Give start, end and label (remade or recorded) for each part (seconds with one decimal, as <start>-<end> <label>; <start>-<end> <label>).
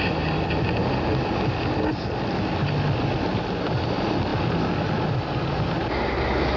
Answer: 0.0-6.6 recorded